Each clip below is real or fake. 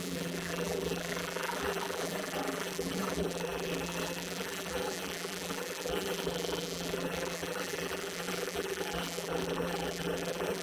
fake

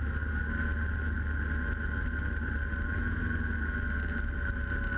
real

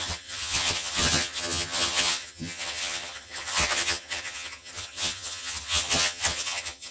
fake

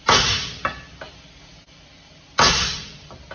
real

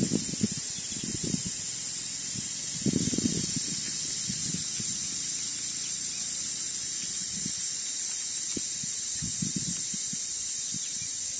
real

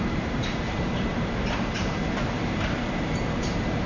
fake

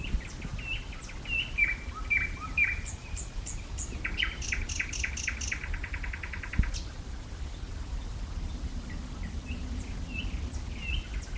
real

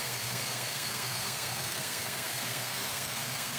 fake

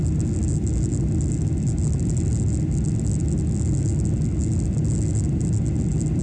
real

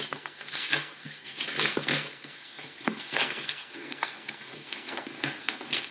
fake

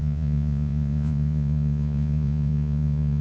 fake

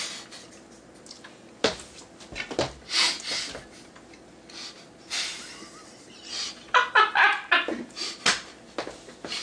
real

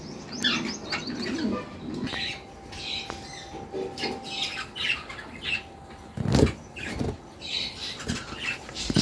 real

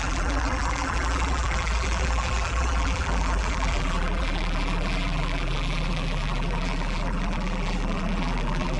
fake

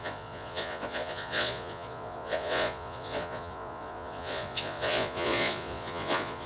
fake